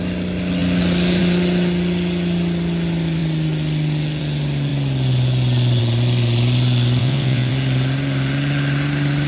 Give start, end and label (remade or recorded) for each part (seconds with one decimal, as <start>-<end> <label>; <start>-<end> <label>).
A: 0.0-7.0 recorded; 7.0-7.5 remade; 7.5-9.3 recorded